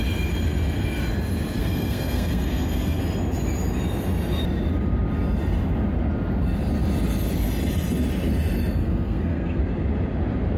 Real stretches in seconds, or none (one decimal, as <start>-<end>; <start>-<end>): 0.0-1.6; 3.0-8.8; 9.6-10.6

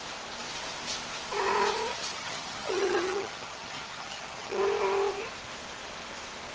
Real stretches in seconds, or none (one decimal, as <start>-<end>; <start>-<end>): 0.0-1.9; 4.6-6.5

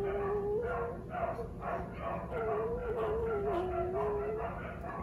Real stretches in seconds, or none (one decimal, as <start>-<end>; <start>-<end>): 0.0-5.0

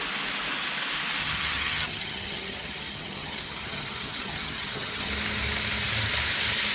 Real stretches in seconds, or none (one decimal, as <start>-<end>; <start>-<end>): 0.0-1.2; 5.1-6.7